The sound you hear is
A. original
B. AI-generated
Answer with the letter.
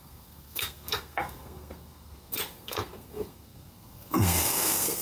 B